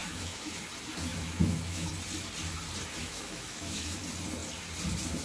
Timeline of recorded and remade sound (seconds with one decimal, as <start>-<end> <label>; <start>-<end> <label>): 0.0-0.6 remade; 0.6-1.1 recorded; 1.1-1.9 remade; 1.9-3.0 recorded; 3.0-4.0 remade; 4.0-5.2 recorded